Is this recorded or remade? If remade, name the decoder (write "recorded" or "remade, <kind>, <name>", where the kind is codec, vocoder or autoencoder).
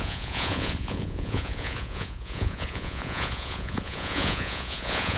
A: remade, vocoder, Vocos